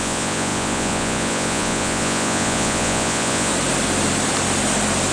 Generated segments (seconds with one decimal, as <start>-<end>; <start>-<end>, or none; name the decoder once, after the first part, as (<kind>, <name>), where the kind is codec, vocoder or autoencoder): 0.0-3.5 (vocoder, Vocos)

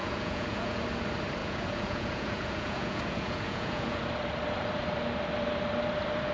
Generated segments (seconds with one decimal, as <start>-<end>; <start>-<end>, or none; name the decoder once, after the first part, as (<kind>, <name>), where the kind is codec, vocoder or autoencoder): 0.0-0.8 (vocoder, Vocos); 1.4-4.0

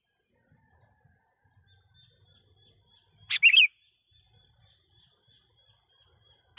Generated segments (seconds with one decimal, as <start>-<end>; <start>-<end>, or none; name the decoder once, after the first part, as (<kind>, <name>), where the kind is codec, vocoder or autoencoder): none

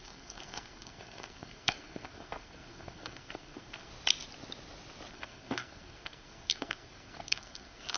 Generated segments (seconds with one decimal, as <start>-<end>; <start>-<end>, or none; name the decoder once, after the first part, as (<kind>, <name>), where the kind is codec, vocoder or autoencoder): 0.0-3.9 (codec, SNAC); 5.1-8.0

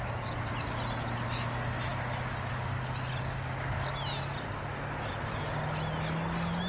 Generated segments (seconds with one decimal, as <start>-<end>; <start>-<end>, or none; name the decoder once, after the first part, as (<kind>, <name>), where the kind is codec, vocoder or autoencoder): none

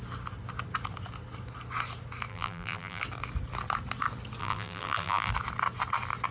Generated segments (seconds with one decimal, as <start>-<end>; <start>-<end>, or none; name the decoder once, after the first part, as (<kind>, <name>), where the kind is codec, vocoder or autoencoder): 2.3-3.0 (vocoder, BigVGAN v2); 4.4-5.3

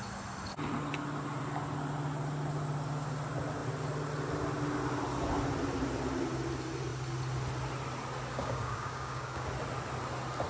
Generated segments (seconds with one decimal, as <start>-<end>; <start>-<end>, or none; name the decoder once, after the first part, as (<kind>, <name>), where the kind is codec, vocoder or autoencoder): 8.3-9.5 (codec, DAC)